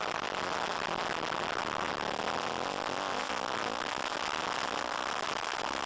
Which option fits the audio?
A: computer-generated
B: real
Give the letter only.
B